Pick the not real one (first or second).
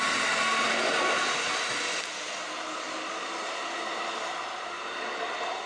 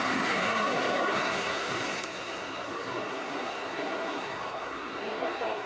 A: second